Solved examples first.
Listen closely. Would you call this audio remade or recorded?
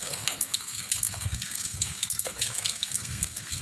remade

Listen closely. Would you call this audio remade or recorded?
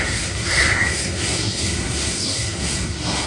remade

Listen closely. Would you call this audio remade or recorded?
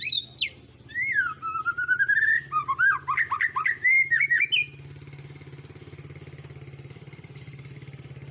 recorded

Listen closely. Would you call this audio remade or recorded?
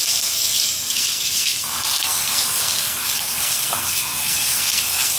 remade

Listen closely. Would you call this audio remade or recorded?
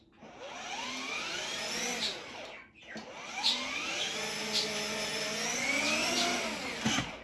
recorded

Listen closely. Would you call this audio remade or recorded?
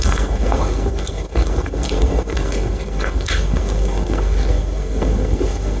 remade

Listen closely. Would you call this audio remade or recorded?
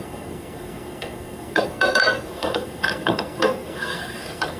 remade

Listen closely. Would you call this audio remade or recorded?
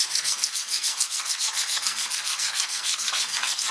remade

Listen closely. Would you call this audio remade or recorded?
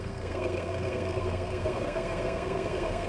remade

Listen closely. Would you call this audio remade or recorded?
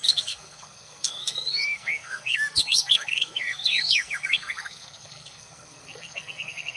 remade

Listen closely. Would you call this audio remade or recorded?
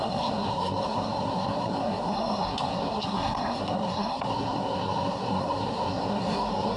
remade